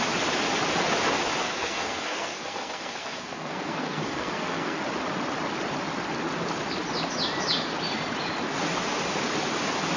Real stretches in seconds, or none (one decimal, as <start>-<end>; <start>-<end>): 0.0-1.4; 4.8-10.0